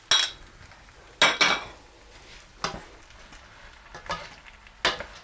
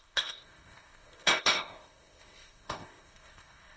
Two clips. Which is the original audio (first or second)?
first